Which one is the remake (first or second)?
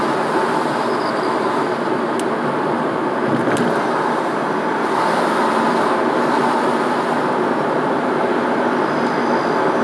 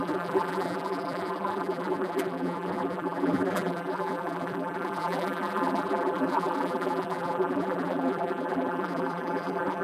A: second